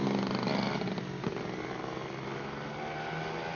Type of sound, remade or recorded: recorded